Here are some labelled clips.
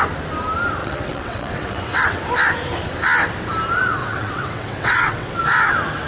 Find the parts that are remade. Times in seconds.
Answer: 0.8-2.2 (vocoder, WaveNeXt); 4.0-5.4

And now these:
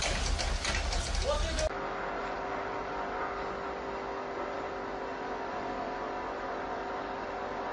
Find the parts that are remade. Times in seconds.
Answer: none

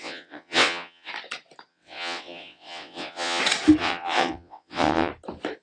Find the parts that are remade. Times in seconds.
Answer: 0.0-1.1 (vocoder, WaveNeXt); 1.7-3.4; 3.8-5.1

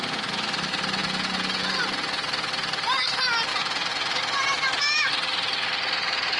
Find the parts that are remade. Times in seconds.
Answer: 1.0-1.8 (vocoder, Vocos); 3.5-4.2